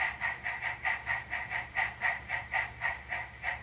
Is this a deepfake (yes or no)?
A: no